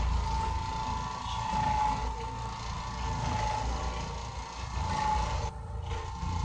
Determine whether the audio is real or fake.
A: real